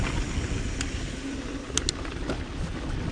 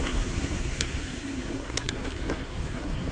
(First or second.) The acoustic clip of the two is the first